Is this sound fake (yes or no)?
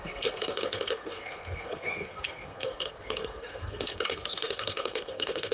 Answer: yes